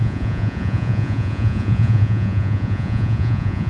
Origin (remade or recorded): remade